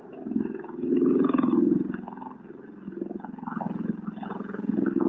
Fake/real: real